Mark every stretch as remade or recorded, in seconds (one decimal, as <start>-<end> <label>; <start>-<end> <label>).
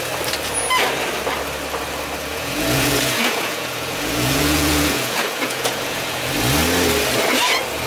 0.0-2.3 recorded; 2.3-6.3 remade; 6.3-7.9 recorded